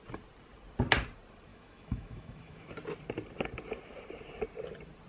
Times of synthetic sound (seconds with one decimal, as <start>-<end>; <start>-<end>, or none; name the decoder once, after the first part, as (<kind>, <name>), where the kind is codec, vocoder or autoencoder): 1.5-2.7 (autoencoder, DAC-VAE)